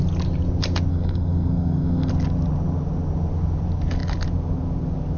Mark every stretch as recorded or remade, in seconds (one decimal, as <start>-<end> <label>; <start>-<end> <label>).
0.0-0.9 recorded; 0.9-2.1 remade; 2.1-5.2 recorded